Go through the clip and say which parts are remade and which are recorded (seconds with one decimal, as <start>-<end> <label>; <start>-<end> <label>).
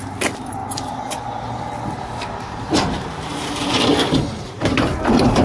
0.0-0.6 remade; 0.6-1.9 recorded; 1.9-5.4 remade